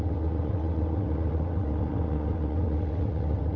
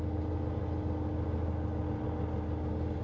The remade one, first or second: first